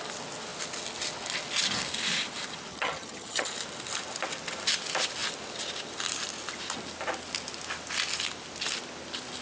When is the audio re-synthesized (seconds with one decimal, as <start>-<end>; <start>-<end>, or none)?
2.7-3.5